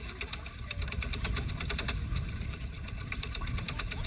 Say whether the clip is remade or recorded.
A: recorded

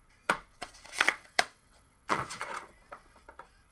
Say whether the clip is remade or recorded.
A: remade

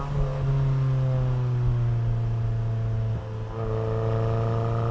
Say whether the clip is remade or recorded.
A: recorded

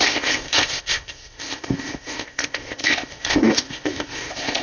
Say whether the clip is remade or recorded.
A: remade